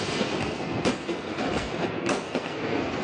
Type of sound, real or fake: fake